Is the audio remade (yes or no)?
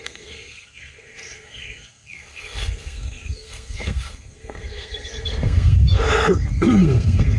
yes